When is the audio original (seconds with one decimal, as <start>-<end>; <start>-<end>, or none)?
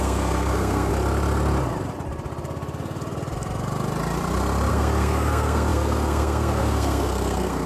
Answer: 0.9-4.7